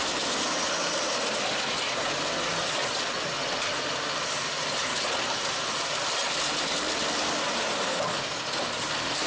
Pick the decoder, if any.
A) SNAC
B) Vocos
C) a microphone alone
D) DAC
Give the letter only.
C